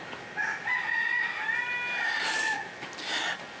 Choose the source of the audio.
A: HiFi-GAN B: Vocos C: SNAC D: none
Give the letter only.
D